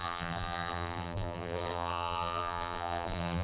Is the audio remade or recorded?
remade